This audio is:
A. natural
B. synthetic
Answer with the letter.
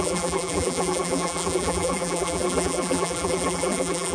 B